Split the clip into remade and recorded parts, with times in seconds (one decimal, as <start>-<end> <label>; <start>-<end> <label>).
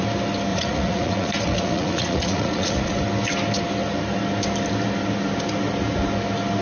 0.0-0.5 recorded; 0.5-2.9 remade; 2.9-6.6 recorded